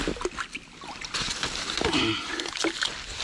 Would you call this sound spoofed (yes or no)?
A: no